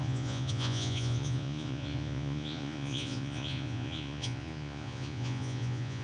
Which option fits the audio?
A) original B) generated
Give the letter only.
B